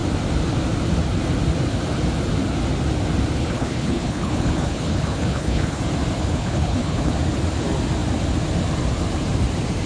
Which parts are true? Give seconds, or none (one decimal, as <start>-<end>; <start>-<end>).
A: 0.0-3.4; 5.8-6.2; 7.1-9.9